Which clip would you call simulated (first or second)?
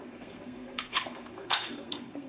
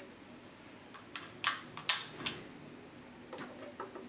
first